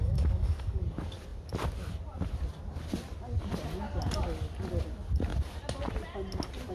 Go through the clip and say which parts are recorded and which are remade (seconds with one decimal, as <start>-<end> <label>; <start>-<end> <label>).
0.0-0.8 remade; 0.8-6.7 recorded

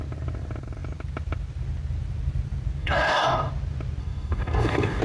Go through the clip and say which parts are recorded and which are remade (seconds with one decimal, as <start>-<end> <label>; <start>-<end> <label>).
0.0-2.8 recorded; 2.8-3.5 remade; 3.5-4.0 recorded; 4.0-5.0 remade

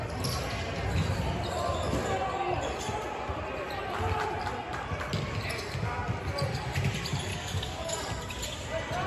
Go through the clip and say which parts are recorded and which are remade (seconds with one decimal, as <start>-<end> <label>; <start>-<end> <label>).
0.0-7.3 recorded; 7.3-8.0 remade; 8.0-9.1 recorded

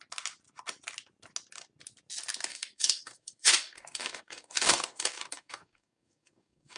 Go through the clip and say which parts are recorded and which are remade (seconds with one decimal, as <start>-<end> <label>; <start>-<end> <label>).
0.0-2.5 recorded; 2.5-6.8 remade